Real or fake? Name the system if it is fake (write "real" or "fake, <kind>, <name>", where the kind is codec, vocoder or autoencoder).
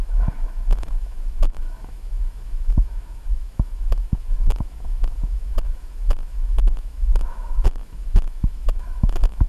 fake, autoencoder, DAC-VAE